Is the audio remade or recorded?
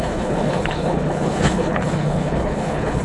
remade